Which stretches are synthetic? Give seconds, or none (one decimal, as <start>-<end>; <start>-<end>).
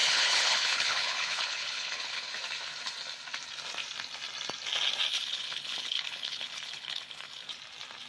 0.0-2.3; 5.1-7.5